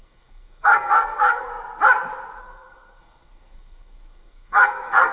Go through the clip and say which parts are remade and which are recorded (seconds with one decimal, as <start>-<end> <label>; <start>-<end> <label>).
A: 0.0-1.5 remade; 1.5-2.4 recorded; 2.4-5.1 remade